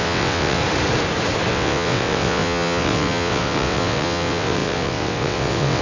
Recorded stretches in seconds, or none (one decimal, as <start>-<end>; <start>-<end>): 0.6-1.5